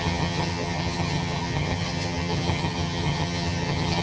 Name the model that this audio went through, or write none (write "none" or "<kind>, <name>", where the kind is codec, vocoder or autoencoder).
vocoder, HiFi-GAN